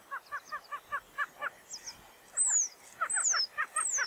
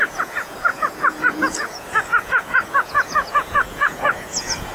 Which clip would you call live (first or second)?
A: first